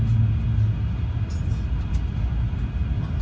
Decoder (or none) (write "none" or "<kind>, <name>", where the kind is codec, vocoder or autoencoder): none